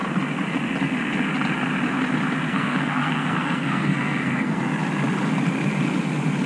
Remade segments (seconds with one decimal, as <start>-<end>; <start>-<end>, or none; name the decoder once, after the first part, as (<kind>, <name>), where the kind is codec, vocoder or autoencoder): 2.5-4.6 (codec, SNAC)